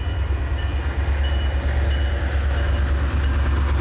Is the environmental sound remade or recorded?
recorded